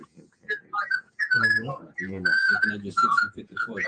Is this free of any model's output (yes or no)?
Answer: no